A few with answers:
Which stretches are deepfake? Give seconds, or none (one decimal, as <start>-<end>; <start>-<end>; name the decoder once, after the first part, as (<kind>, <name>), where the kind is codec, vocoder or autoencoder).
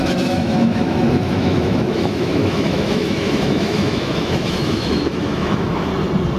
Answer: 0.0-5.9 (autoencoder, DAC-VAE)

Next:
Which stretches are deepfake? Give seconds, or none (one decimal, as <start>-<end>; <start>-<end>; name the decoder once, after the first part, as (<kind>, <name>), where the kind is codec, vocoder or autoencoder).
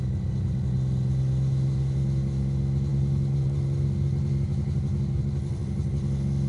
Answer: none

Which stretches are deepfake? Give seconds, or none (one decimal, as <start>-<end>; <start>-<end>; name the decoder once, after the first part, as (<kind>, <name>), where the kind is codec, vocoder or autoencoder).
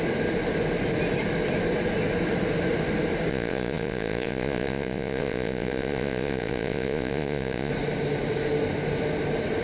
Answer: 3.3-7.7 (vocoder, Vocos)